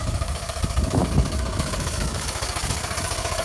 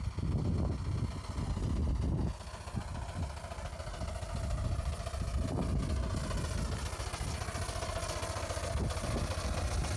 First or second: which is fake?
first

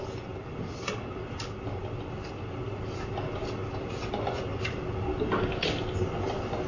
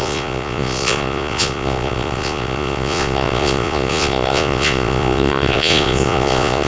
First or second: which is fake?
second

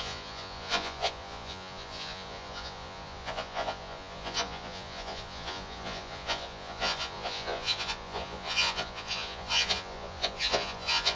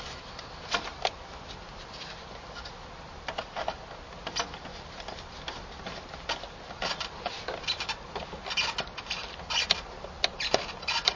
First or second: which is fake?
first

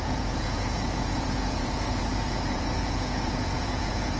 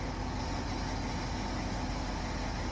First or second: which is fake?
first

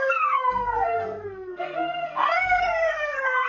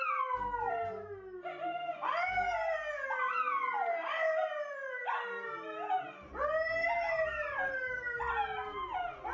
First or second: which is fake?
first